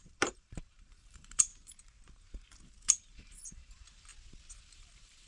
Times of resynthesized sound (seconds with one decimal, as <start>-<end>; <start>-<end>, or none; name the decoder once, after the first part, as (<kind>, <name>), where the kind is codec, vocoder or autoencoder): 0.0-1.5 (vocoder, BigVGAN v2); 3.1-4.1; 4.6-5.3